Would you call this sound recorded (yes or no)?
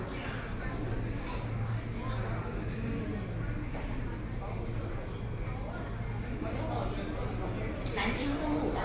yes